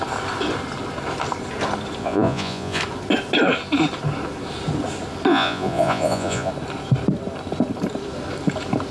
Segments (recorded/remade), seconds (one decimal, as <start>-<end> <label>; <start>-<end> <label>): 0.0-2.0 recorded; 2.0-2.8 remade; 2.8-5.3 recorded; 5.3-6.5 remade; 6.5-8.9 recorded